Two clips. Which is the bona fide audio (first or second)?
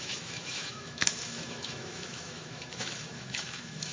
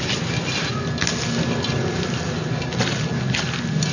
second